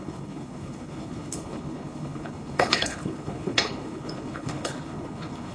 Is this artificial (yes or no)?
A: yes